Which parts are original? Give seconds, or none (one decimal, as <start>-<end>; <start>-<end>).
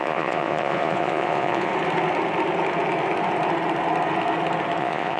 1.7-4.8